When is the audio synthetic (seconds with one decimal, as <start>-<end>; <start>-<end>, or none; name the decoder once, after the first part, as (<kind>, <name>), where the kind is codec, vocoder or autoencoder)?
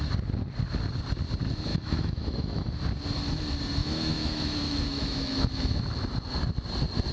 1.7-2.7 (autoencoder, DAC-VAE); 3.8-5.8